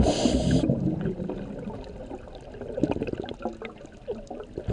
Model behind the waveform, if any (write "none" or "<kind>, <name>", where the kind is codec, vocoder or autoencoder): none